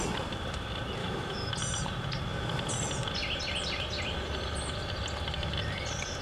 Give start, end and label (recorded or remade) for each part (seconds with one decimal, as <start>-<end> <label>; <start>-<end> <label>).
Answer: 0.0-1.0 recorded; 1.0-1.5 remade; 1.5-6.2 recorded